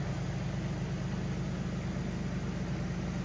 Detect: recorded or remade recorded